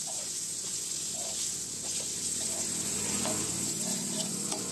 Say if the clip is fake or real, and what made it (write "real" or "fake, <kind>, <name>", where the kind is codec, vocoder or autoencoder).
fake, vocoder, Vocos